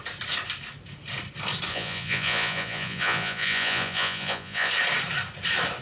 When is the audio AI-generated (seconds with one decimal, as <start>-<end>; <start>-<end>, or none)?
1.7-4.7